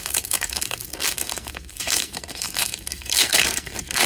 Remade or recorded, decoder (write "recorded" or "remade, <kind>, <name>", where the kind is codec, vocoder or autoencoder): remade, codec, SNAC